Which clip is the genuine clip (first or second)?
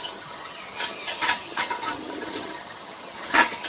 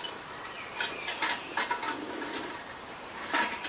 second